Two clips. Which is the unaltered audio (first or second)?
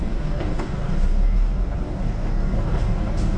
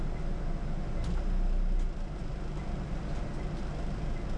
second